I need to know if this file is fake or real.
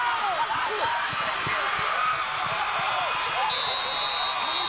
real